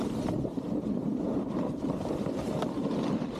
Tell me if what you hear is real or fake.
real